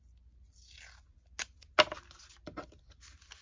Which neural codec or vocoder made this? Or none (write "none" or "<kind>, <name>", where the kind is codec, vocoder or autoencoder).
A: none